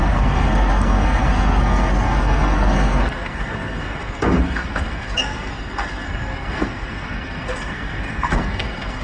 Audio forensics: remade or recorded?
remade